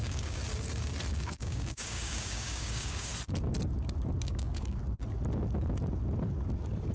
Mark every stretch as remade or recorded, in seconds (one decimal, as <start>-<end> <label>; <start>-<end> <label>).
0.0-0.4 remade; 0.4-1.1 recorded; 1.1-3.1 remade; 3.1-4.2 recorded; 4.2-4.8 remade; 4.8-6.9 recorded